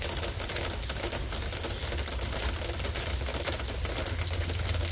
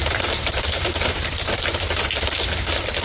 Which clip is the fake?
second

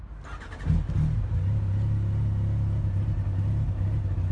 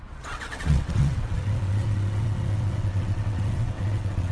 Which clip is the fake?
second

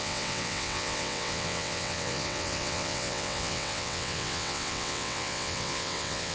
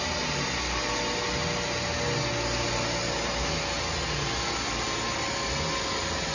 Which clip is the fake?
first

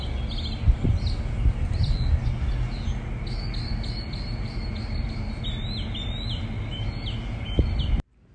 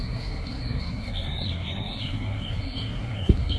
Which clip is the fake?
second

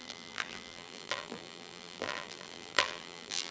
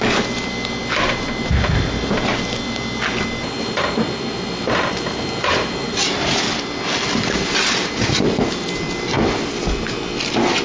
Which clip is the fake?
first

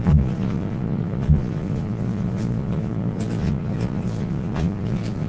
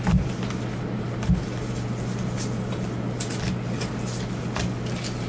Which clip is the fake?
first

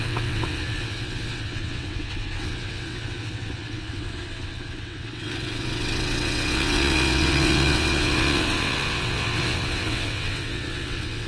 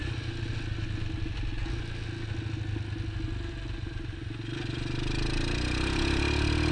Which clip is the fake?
first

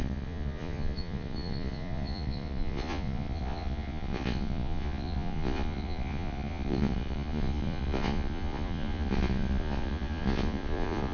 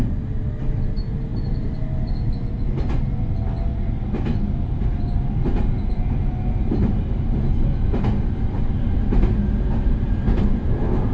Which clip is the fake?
first